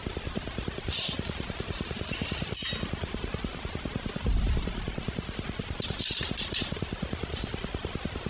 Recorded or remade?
recorded